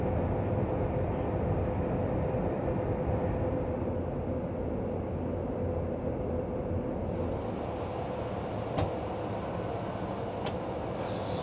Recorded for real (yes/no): yes